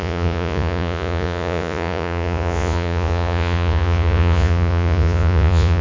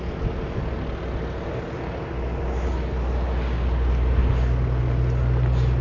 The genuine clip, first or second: second